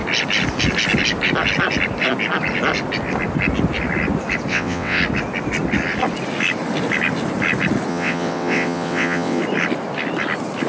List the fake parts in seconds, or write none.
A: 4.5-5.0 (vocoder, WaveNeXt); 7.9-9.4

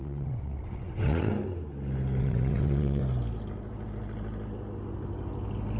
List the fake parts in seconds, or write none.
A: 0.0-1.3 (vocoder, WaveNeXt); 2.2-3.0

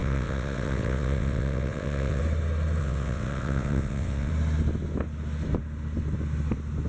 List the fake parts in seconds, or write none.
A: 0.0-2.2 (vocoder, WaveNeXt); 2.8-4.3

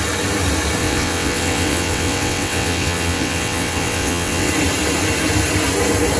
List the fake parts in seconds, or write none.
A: 0.8-4.5 (vocoder, WaveNeXt)

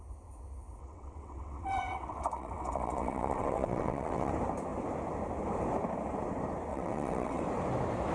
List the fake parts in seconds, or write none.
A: 0.8-4.3 (vocoder, WaveNeXt); 6.7-7.4